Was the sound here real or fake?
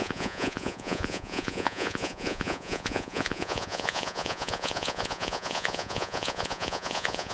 fake